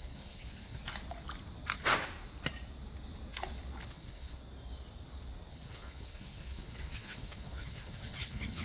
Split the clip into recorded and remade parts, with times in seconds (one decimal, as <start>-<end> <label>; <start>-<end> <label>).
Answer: 0.0-0.8 remade; 0.8-3.9 recorded; 3.9-4.4 remade; 4.4-5.5 recorded; 5.5-8.6 remade